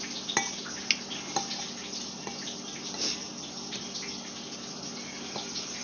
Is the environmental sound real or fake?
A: real